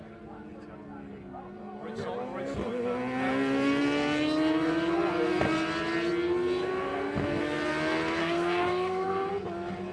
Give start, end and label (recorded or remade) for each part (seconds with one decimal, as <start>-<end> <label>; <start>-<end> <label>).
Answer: 0.0-8.2 recorded; 8.2-9.3 remade; 9.3-9.9 recorded